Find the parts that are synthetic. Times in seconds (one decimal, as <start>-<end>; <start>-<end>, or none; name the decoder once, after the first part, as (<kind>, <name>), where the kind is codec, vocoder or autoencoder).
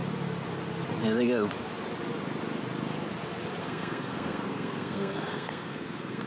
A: 3.6-6.3 (codec, SNAC)